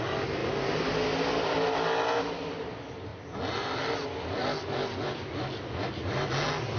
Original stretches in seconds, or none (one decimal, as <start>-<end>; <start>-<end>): 0.0-6.8